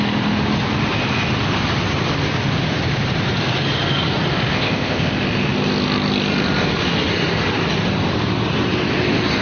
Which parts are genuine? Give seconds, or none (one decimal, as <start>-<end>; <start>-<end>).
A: 0.0-4.5; 5.1-9.4